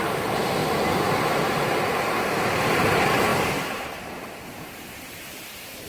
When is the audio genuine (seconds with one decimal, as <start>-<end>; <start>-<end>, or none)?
0.6-2.2